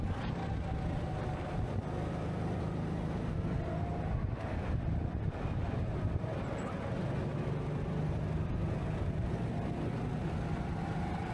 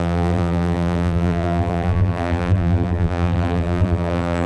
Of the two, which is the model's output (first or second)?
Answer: second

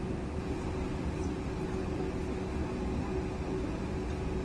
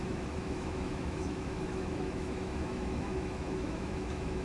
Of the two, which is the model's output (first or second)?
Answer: second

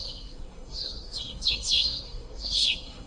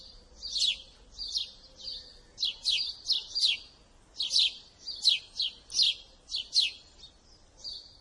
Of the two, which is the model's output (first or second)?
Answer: first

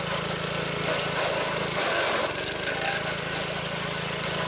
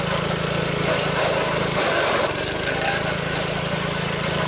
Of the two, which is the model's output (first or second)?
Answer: second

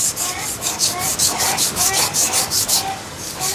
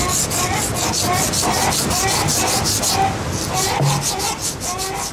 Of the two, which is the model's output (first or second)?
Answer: first